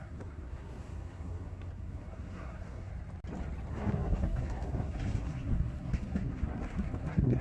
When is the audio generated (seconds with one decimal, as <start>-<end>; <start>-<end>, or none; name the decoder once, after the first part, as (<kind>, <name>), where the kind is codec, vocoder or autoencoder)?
0.0-2.9 (codec, SNAC); 3.7-7.4